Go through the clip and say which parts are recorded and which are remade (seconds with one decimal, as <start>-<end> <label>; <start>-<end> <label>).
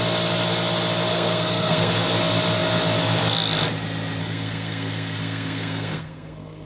0.0-1.1 recorded; 1.1-1.9 remade; 1.9-4.2 recorded; 4.2-6.7 remade